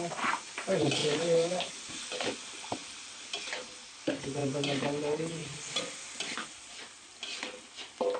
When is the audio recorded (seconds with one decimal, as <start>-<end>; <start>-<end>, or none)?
0.0-1.0; 1.7-5.4; 6.7-8.2